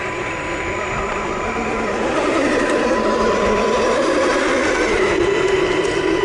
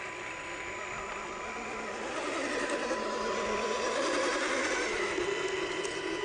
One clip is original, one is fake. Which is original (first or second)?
second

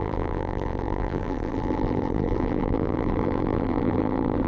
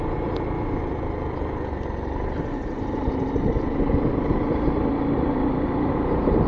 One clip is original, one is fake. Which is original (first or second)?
second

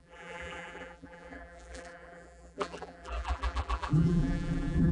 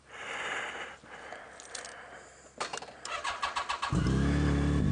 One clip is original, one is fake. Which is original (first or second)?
second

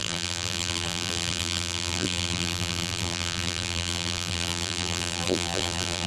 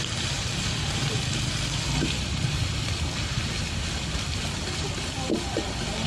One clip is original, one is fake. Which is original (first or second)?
second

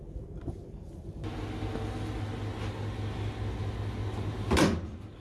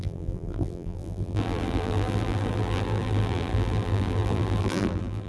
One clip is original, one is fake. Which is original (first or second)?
first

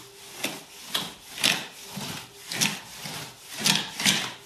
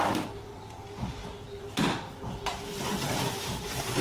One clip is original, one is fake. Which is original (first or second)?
first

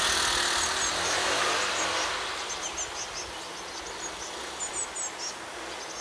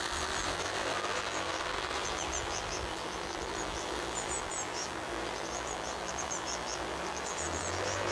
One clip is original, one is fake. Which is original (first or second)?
first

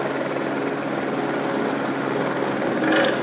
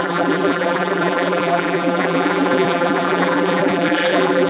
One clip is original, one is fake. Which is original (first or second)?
first